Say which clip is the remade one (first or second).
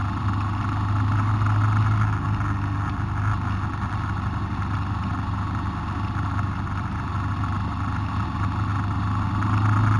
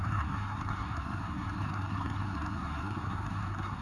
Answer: second